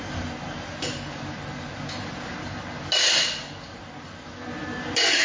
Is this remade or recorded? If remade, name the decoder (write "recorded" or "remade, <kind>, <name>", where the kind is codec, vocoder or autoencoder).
recorded